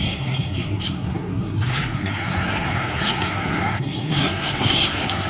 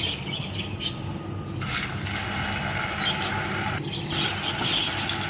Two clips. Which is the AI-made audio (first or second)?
first